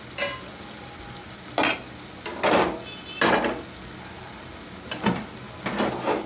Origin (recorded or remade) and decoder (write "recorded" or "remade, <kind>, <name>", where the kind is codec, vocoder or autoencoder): recorded